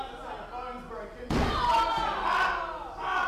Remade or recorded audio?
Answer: recorded